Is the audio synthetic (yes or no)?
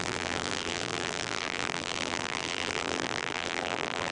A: yes